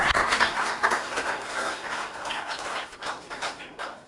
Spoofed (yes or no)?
yes